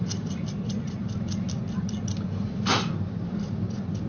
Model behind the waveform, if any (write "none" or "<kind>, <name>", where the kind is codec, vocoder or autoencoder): none